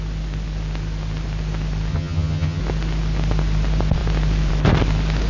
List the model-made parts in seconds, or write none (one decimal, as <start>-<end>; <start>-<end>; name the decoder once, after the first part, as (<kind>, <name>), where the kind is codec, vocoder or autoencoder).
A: 1.9-2.6 (vocoder, HiFi-GAN)